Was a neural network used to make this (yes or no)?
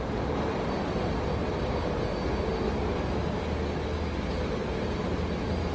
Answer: no